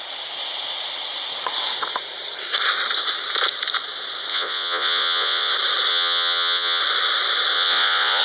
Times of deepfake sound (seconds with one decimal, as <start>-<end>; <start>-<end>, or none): 4.3-5.5; 5.9-6.8; 7.5-8.2